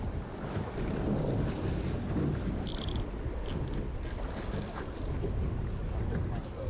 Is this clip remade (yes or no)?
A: no